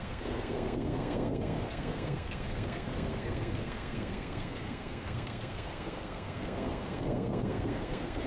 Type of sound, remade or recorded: remade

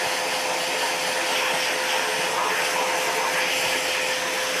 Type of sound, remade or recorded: recorded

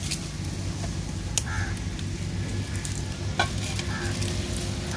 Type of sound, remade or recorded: recorded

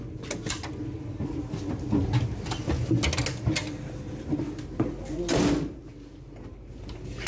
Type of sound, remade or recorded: recorded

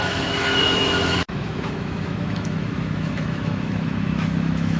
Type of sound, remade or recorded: remade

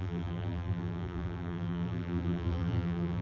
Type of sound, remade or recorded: remade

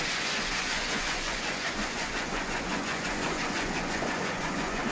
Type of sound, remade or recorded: remade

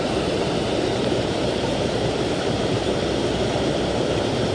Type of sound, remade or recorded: remade